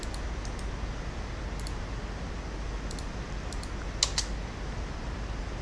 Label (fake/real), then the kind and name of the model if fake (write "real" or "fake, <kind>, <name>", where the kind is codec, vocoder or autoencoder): real